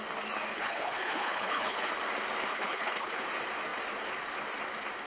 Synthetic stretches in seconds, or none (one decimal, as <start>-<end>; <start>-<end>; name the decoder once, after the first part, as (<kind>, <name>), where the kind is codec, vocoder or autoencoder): 0.5-1.9 (codec, HILCodec); 2.5-3.2